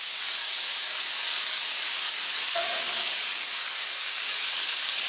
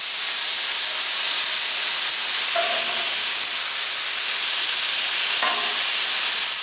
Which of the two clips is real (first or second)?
second